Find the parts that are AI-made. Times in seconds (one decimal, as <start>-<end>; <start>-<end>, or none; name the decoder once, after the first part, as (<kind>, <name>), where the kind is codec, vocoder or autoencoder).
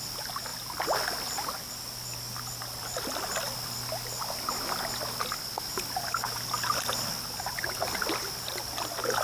none